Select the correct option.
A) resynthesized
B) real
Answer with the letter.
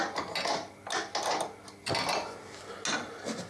B